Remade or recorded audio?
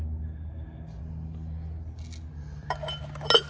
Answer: recorded